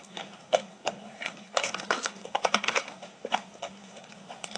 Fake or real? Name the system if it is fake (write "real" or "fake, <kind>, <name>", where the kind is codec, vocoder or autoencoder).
fake, codec, SNAC